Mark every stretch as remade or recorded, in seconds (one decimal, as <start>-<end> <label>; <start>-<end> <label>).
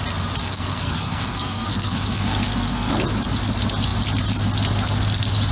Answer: 0.0-0.4 recorded; 0.4-2.9 remade; 2.9-5.5 recorded